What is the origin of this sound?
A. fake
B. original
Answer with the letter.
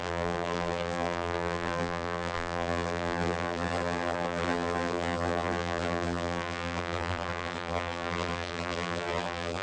A